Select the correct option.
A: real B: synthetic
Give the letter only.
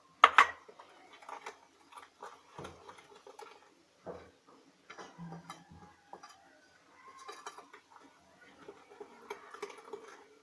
A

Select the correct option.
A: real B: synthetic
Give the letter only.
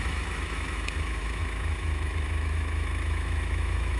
B